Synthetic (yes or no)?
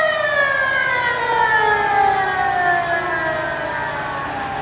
no